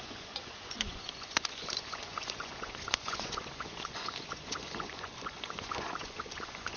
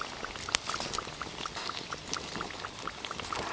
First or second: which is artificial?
first